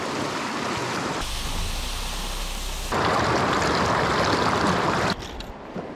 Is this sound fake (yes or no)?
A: no